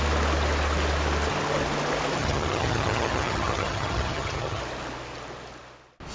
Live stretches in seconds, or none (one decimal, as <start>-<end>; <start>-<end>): 0.0-2.2; 4.6-6.1